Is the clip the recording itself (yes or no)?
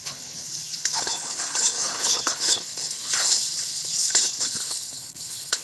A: no